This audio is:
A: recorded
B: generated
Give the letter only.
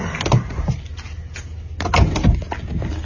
A